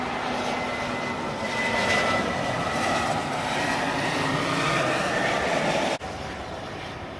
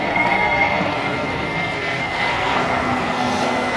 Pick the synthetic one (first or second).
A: second